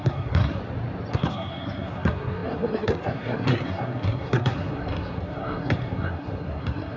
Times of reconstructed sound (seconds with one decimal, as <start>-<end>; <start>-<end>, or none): 0.0-0.6; 1.1-7.0